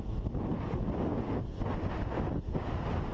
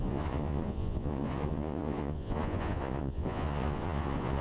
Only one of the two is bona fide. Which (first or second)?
first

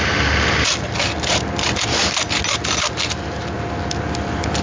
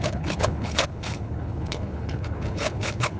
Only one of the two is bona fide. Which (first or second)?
first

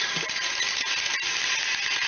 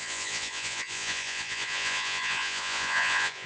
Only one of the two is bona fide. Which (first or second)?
first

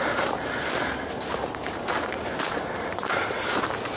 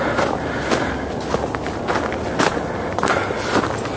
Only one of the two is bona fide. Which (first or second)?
second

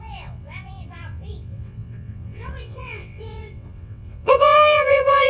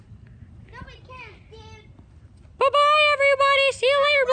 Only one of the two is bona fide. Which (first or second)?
second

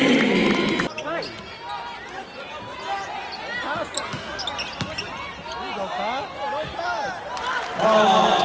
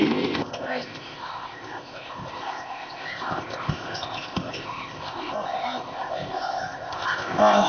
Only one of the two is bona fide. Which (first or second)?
first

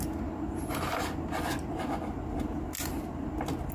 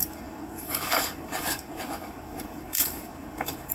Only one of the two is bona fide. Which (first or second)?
first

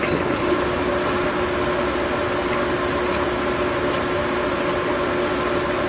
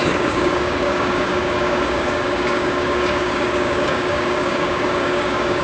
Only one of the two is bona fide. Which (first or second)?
first